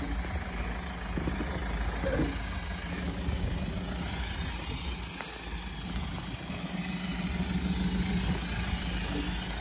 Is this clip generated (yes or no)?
no